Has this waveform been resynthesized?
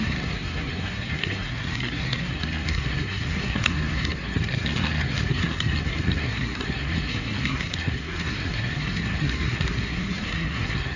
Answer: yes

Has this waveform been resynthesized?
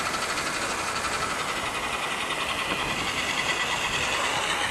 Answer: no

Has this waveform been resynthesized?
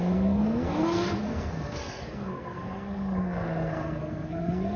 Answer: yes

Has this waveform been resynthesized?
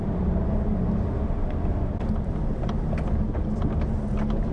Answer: no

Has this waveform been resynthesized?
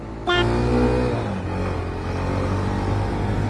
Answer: no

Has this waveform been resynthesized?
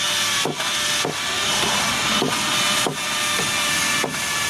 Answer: no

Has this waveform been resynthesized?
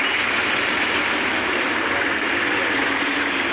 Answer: no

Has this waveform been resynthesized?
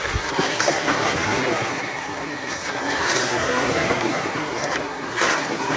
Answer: yes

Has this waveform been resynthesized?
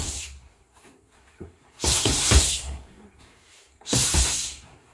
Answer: yes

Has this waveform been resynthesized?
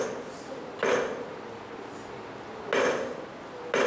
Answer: no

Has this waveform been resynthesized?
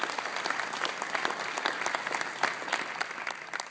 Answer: no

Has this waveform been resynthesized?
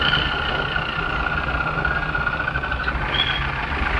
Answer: no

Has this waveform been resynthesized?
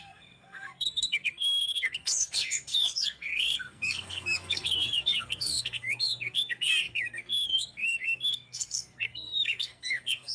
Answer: yes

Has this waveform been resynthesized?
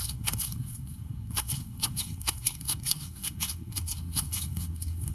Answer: yes